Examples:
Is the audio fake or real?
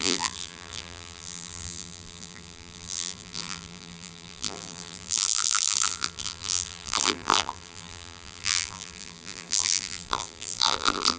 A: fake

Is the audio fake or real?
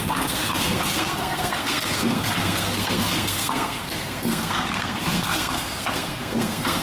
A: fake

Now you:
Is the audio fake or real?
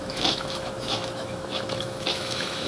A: fake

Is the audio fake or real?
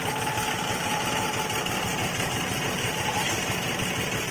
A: fake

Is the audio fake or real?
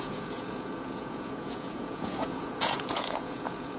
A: fake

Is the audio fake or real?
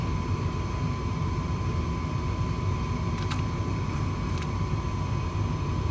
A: fake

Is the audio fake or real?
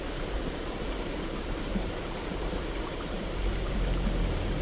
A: fake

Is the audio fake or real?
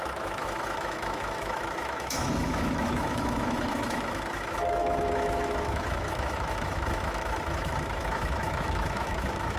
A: fake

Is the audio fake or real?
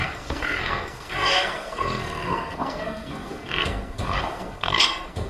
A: fake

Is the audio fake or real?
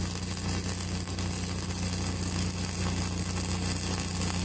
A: real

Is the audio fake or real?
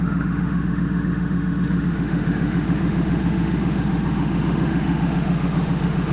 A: fake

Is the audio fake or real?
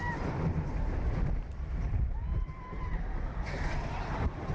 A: real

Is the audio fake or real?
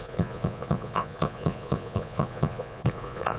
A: fake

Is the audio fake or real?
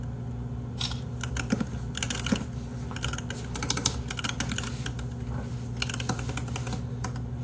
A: real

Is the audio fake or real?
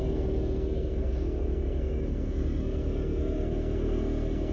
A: fake